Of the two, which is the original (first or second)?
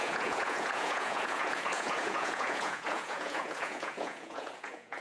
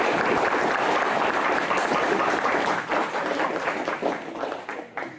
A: second